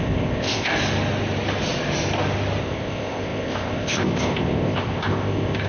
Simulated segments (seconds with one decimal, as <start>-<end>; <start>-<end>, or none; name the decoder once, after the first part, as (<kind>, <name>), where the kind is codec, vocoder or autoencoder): 0.0-0.7 (codec, ZipCodec); 2.6-5.7